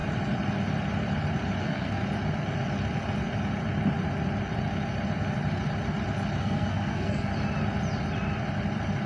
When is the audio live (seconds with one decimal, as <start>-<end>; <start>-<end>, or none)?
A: 0.0-1.6; 2.0-6.4; 7.3-9.1